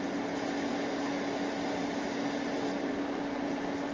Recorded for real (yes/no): yes